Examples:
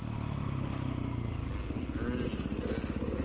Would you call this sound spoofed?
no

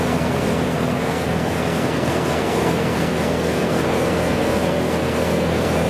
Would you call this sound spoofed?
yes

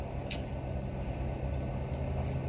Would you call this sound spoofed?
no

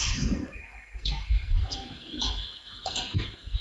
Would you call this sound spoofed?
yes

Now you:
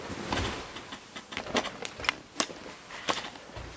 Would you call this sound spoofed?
no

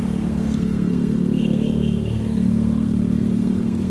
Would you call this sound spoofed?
yes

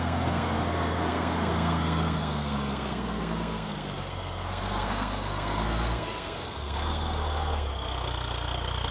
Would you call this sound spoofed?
yes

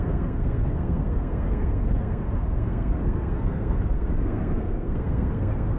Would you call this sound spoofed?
yes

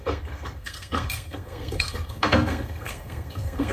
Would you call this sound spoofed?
yes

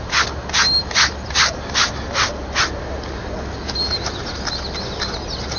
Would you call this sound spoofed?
no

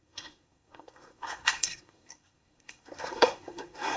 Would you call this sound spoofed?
yes